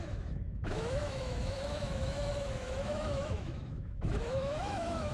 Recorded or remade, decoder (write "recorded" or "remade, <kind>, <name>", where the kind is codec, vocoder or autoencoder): remade, autoencoder, DAC-VAE